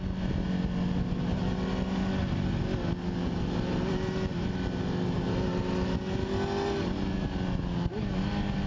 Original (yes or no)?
yes